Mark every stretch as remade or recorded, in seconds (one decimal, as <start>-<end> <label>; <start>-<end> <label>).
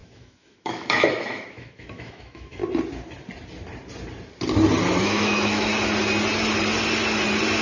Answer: 0.0-2.6 remade; 2.6-5.0 recorded; 5.0-5.7 remade; 5.7-7.6 recorded